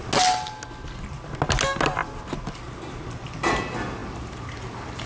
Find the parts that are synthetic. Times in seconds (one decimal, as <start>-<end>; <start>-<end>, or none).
none